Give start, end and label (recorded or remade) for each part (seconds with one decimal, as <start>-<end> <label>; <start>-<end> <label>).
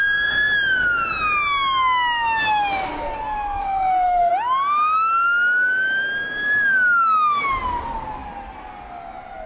0.0-3.6 recorded; 3.6-4.3 remade; 4.3-9.5 recorded